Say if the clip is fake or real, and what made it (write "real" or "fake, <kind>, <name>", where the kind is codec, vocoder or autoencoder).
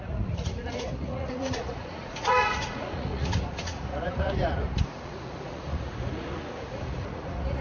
fake, vocoder, Vocos